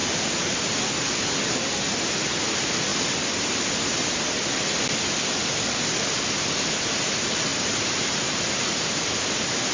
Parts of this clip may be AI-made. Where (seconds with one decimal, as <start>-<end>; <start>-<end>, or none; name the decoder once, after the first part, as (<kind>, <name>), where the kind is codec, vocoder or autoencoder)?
7.5-9.0 (vocoder, BigVGAN v2)

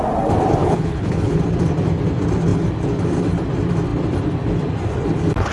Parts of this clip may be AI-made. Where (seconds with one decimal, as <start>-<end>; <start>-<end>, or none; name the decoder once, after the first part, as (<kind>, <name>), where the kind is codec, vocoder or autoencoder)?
0.6-1.4 (codec, HILCodec)

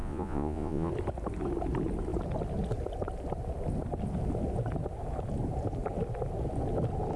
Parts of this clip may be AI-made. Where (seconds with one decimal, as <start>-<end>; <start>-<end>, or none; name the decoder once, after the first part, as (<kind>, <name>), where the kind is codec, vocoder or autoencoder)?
0.0-0.9 (vocoder, Vocos)

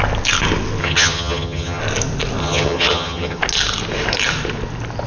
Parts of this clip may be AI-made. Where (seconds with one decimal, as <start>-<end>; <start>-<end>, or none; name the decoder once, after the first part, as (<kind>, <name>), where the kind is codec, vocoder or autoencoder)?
0.8-1.8 (vocoder, HiFi-GAN); 2.4-3.4

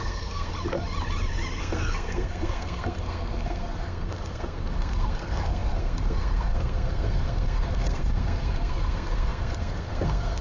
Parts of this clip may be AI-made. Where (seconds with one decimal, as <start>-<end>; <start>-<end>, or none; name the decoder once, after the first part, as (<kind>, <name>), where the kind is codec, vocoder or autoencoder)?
0.0-0.5 (codec, SNAC); 1.6-10.4

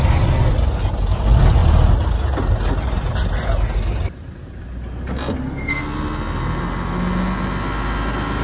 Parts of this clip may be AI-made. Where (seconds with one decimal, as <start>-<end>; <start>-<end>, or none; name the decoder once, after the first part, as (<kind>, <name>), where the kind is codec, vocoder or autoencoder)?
none